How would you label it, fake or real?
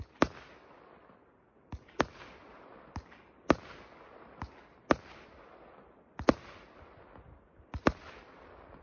real